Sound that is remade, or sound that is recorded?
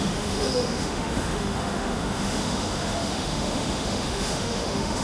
remade